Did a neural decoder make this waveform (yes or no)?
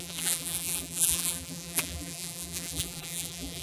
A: yes